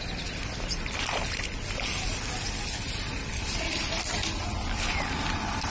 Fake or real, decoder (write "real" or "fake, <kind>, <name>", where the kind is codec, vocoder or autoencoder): real